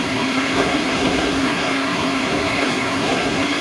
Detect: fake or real fake